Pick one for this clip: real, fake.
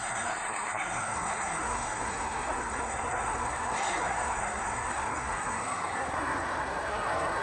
fake